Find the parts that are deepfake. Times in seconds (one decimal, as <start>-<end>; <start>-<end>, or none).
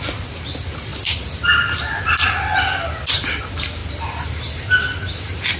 0.9-3.4